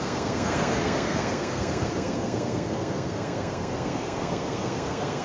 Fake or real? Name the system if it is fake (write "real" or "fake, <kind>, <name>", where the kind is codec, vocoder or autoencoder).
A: fake, codec, SNAC